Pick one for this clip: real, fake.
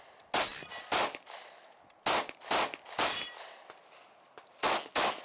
real